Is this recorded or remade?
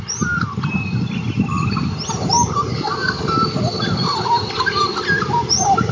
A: recorded